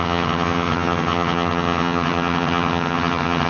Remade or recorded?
remade